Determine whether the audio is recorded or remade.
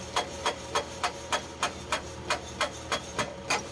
remade